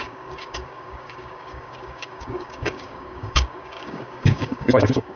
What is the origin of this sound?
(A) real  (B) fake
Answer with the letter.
B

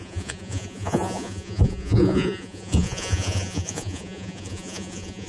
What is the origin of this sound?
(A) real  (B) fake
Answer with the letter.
B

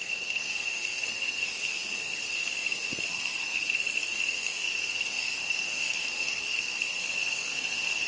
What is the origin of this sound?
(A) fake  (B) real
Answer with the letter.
A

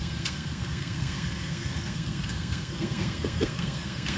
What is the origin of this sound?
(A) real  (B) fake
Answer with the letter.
B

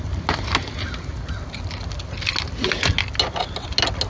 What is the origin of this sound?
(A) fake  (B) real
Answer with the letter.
B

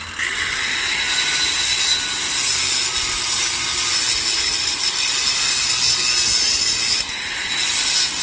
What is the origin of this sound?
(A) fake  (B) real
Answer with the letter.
B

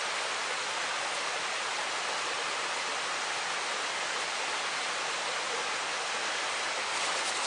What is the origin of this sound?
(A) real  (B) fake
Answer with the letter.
A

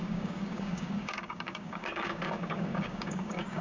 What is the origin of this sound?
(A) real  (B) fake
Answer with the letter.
B